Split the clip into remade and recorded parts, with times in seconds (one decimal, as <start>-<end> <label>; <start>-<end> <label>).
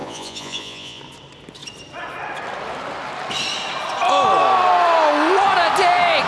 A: 0.0-1.0 remade; 1.0-6.3 recorded